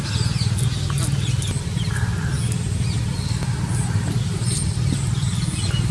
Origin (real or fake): real